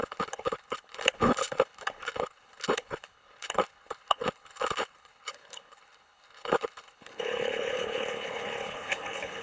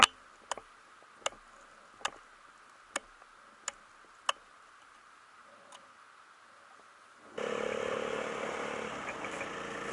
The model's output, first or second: first